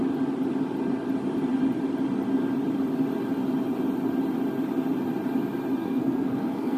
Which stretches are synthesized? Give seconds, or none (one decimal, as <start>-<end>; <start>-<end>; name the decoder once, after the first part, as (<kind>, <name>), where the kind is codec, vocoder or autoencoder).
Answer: 5.8-6.8 (codec, SNAC)